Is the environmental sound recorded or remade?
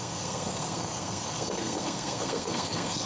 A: remade